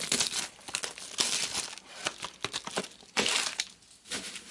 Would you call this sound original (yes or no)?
yes